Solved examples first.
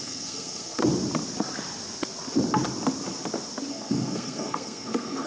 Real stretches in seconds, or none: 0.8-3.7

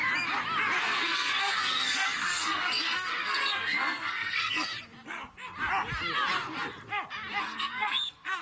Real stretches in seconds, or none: 0.0-0.8; 4.7-7.4

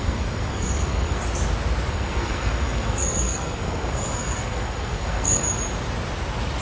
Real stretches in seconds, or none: 1.2-1.9; 5.4-6.6

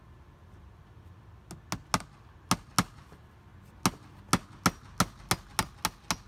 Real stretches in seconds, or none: 0.0-6.3

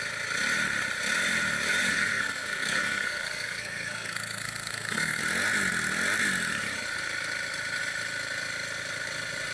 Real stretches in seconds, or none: 0.0-1.9; 5.2-9.5

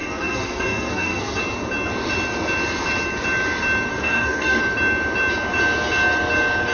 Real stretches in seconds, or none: 1.4-3.9; 4.6-6.7